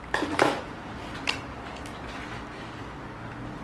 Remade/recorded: recorded